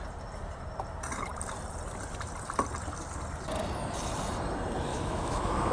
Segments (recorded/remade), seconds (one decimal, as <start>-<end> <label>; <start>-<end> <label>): 0.0-4.9 recorded; 4.9-5.7 remade